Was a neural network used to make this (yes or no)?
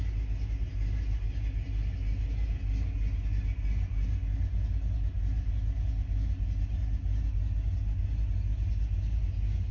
no